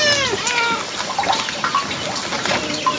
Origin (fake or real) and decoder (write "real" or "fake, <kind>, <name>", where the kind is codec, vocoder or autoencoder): real